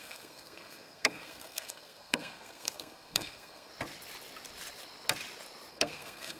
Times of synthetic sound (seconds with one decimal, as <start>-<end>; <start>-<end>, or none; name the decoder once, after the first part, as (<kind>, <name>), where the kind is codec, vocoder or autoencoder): 0.0-3.7 (codec, SNAC); 5.7-6.4